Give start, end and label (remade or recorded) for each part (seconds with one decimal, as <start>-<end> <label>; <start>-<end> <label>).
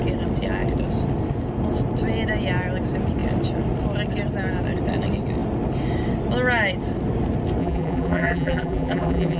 0.0-7.6 recorded; 7.6-9.4 remade